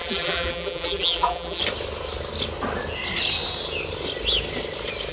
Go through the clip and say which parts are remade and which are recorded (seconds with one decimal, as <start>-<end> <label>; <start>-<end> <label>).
0.0-1.6 remade; 1.6-5.1 recorded